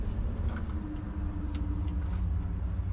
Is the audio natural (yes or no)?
yes